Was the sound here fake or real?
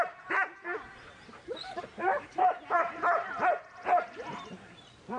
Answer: fake